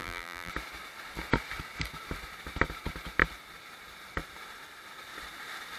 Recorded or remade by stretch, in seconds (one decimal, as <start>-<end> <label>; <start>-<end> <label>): 0.0-0.5 remade; 0.5-5.8 recorded